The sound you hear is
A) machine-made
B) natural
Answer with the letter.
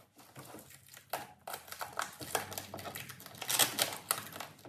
B